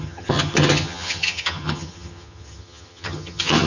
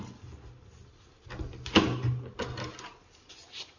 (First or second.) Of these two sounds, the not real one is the first